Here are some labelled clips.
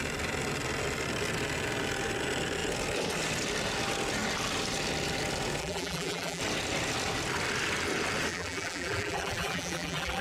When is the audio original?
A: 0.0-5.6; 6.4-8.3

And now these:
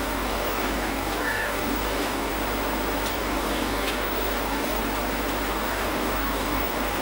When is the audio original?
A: 2.3-3.1; 4.8-5.5

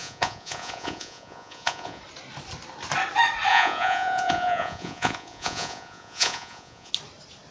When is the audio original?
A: 2.0-3.5; 6.9-7.5

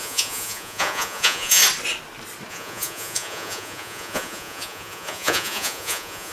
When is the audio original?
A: 1.6-2.5